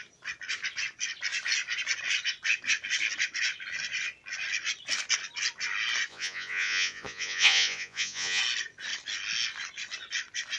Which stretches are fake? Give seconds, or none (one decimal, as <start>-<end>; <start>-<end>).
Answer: 6.1-8.4